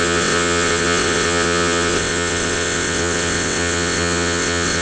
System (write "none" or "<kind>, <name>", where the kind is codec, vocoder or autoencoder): vocoder, WaveNeXt